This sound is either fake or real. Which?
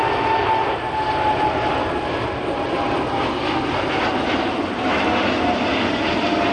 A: real